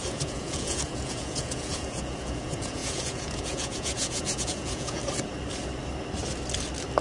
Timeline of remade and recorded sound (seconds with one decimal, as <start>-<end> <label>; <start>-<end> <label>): 0.0-5.0 remade; 5.0-7.0 recorded